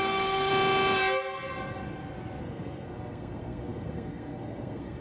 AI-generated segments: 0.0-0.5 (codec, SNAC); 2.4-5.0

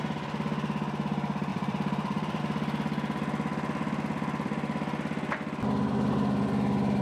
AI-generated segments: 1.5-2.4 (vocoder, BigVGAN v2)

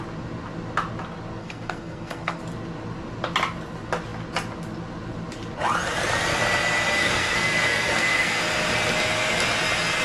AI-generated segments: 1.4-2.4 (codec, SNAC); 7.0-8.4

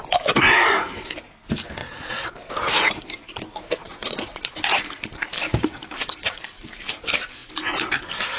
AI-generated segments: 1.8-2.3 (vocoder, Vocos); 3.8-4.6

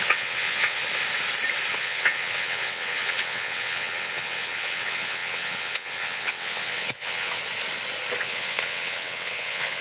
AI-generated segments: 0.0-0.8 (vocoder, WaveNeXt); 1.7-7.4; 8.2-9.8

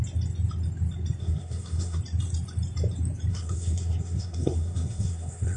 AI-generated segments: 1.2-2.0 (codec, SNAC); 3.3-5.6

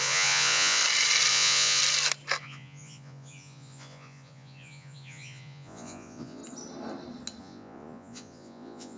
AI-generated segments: 0.0-0.8 (vocoder, Vocos); 1.3-1.8; 2.4-6.4; 7.4-9.0

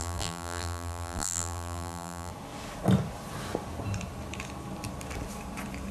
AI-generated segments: 0.0-2.3 (vocoder, BigVGAN v2)